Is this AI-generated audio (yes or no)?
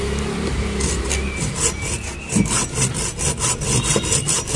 no